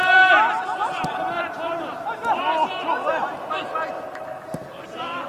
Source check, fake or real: real